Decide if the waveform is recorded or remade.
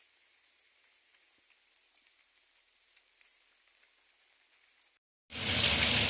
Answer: recorded